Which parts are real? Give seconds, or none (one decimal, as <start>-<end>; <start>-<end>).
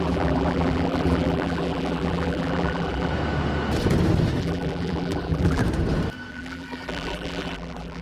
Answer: 3.1-4.4; 5.6-6.3